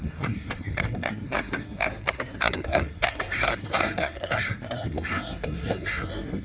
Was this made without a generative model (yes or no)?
no